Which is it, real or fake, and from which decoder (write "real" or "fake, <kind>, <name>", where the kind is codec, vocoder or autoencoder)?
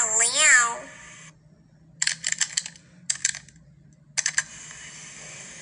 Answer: real